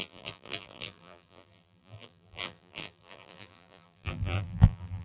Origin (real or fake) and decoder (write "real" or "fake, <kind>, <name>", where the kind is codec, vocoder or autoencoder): fake, vocoder, BigVGAN v2